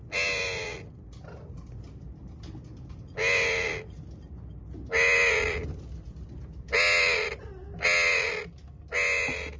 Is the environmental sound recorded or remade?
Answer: recorded